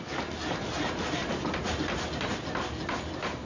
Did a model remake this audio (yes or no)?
no